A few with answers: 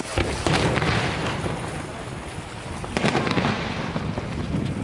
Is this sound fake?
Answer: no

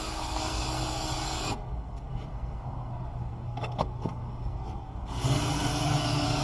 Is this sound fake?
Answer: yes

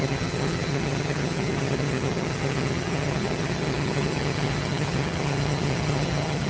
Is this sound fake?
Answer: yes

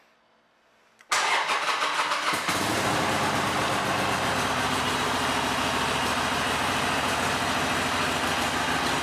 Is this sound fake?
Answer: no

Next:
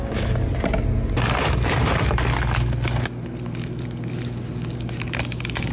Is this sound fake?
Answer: no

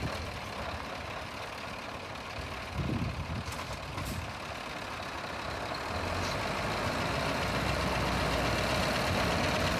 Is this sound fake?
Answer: no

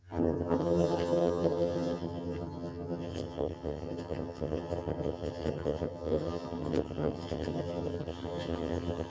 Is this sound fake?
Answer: yes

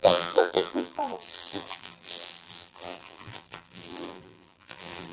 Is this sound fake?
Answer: yes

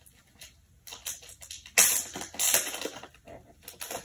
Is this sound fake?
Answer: no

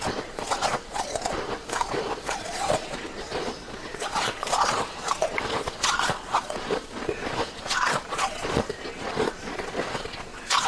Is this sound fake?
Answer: yes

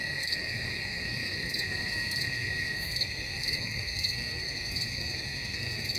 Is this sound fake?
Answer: yes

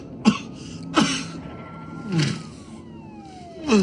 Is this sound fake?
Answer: no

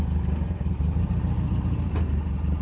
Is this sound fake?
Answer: no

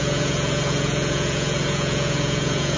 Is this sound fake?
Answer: yes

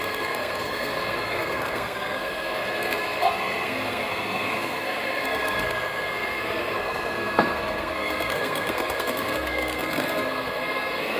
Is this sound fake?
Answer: yes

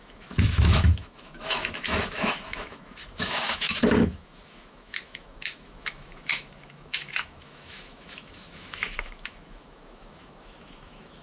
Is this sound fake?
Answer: yes